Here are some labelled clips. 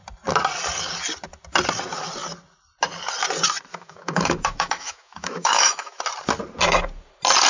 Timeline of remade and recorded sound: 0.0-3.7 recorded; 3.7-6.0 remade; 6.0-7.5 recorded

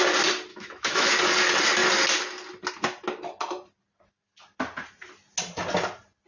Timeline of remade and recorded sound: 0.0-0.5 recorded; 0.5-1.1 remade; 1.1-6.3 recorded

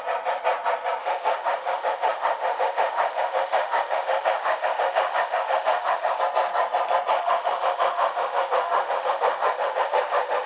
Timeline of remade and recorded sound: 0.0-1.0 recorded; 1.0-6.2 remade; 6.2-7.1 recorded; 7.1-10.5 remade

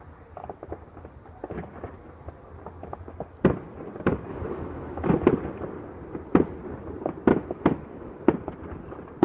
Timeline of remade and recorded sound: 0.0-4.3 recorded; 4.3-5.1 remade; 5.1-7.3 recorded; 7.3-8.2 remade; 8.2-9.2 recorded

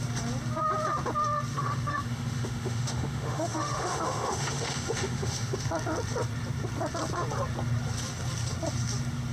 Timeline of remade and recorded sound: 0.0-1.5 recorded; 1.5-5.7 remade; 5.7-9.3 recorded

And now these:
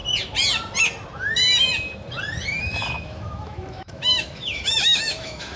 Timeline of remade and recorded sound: 0.0-2.6 recorded; 2.6-5.6 remade